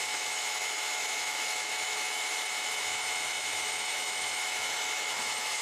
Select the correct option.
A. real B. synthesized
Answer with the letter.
B